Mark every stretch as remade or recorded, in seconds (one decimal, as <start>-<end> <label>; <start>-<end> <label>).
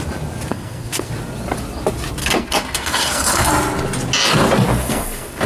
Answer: 0.0-0.5 recorded; 0.5-1.1 remade; 1.1-2.2 recorded; 2.2-3.5 remade; 3.5-4.8 recorded; 4.8-5.5 remade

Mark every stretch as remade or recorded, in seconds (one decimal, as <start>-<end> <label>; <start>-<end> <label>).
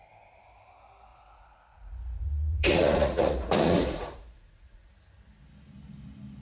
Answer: 0.0-1.1 recorded; 1.1-4.9 remade; 4.9-6.4 recorded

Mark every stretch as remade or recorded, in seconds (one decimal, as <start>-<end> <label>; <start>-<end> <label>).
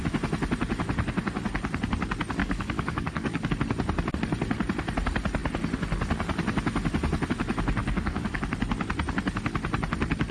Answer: 0.0-2.4 recorded; 2.4-3.5 remade; 3.5-7.8 recorded; 7.8-8.4 remade; 8.4-10.3 recorded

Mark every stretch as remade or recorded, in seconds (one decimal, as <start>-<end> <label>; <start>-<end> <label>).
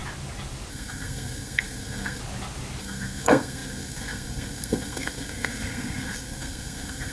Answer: 0.0-0.7 recorded; 0.7-2.2 remade; 2.2-2.8 recorded; 2.8-7.1 remade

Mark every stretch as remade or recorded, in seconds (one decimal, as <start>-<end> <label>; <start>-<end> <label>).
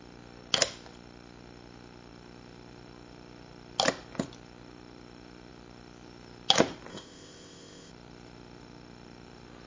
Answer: 0.0-6.9 recorded; 6.9-7.9 remade; 7.9-9.7 recorded